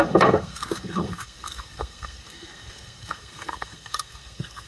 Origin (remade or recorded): remade